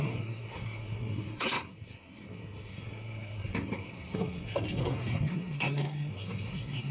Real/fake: fake